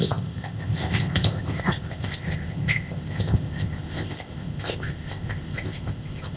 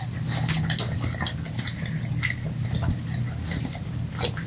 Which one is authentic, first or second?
second